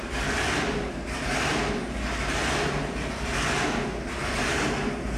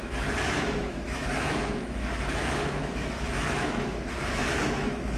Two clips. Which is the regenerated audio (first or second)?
second